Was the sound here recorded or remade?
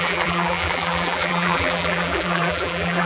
remade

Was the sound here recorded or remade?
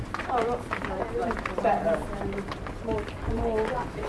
recorded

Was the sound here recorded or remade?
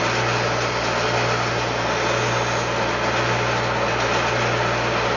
recorded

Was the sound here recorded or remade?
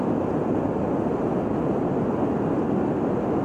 recorded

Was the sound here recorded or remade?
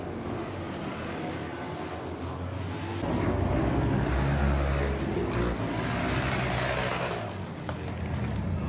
recorded